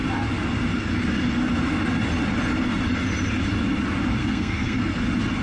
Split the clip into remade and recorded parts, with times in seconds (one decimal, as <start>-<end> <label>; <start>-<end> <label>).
0.0-4.2 recorded; 4.2-5.0 remade; 5.0-5.4 recorded